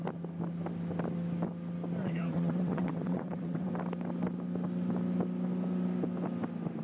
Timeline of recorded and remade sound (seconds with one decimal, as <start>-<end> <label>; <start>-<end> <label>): 0.0-2.0 recorded; 2.0-3.7 remade; 3.7-6.8 recorded